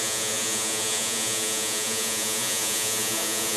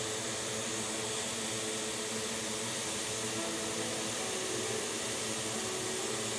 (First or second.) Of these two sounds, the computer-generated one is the first